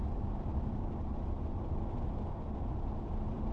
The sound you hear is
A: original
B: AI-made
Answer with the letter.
A